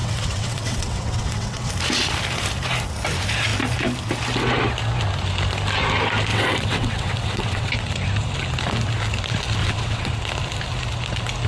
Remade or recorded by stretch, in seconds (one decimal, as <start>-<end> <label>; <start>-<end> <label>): 0.0-1.7 remade; 1.7-6.3 recorded; 6.3-7.7 remade; 7.7-9.6 recorded; 9.6-10.1 remade; 10.1-11.5 recorded

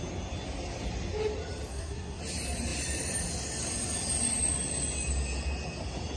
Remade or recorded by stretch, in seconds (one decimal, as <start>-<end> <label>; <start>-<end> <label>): 0.0-1.7 recorded; 1.7-2.2 remade; 2.2-6.2 recorded

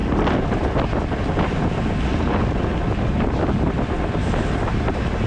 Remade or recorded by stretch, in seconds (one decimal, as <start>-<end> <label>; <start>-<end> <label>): 0.0-5.3 recorded

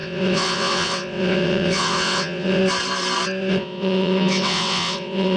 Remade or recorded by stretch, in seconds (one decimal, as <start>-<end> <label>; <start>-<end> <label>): 0.0-2.6 remade; 2.6-3.5 recorded; 3.5-5.4 remade

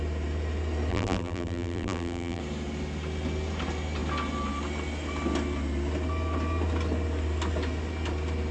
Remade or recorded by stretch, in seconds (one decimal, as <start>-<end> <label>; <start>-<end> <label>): 0.0-0.9 recorded; 0.9-2.4 remade; 2.4-8.5 recorded